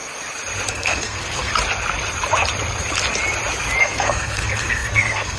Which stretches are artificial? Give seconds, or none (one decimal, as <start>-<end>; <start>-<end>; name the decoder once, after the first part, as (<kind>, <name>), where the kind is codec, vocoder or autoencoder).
0.7-1.5 (codec, SNAC); 3.8-5.4